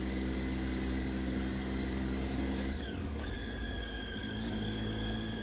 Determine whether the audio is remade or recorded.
remade